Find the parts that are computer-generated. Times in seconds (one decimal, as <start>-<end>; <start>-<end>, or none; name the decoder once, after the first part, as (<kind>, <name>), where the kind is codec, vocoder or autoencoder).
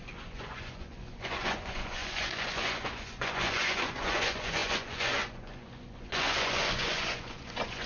0.0-7.9 (vocoder, Vocos)